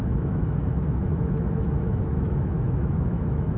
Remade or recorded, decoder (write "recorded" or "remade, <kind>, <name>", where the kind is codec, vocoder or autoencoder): remade, autoencoder, DAC-VAE